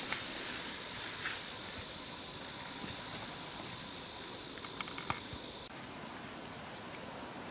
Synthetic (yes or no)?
no